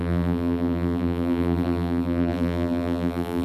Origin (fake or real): fake